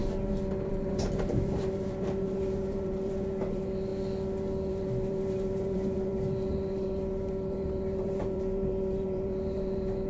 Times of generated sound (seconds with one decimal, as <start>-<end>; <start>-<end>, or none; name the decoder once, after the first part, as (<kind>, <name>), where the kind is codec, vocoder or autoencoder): 0.7-3.9 (vocoder, BigVGAN v2); 4.7-10.1